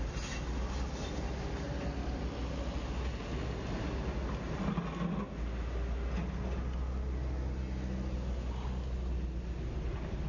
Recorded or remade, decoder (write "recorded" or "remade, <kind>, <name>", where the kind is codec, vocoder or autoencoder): recorded